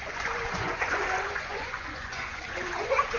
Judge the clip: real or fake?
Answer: fake